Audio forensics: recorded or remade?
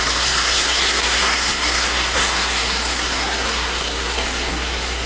remade